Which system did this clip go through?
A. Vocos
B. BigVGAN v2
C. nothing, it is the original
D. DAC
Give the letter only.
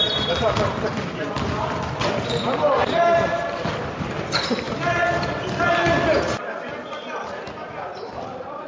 C